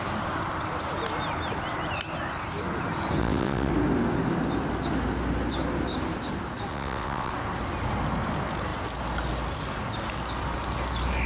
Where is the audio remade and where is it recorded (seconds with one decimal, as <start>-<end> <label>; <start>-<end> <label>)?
0.0-3.2 recorded; 3.2-3.7 remade; 3.7-6.7 recorded; 6.7-7.3 remade; 7.3-11.3 recorded